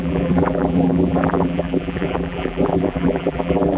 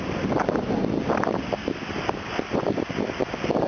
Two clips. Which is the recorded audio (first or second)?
second